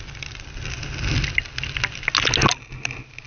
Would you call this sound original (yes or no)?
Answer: yes